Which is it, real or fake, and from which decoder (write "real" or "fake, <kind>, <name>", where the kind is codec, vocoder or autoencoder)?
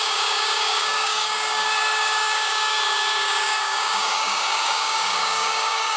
fake, codec, DAC